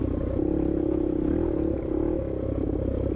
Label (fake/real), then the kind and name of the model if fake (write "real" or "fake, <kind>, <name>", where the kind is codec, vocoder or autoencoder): real